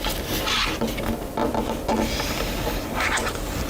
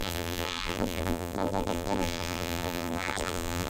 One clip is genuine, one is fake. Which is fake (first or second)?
second